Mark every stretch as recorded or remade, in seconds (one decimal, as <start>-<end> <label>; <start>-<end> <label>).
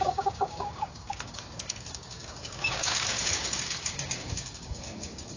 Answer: 0.0-5.4 remade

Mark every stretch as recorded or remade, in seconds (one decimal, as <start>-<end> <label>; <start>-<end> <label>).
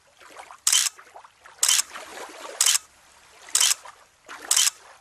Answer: 0.0-5.0 recorded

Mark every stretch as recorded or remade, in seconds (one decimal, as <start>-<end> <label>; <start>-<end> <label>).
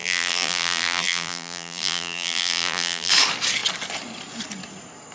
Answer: 0.0-3.1 remade; 3.1-5.1 recorded